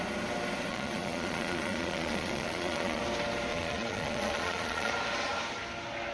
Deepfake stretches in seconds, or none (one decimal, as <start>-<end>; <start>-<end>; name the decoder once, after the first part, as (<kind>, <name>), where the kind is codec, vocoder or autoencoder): 0.7-3.0 (vocoder, Vocos); 3.5-4.9